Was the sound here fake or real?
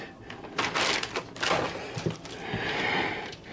real